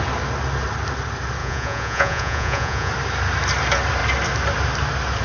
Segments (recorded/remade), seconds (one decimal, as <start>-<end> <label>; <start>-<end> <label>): 0.0-1.4 recorded; 1.4-2.9 remade; 2.9-5.2 recorded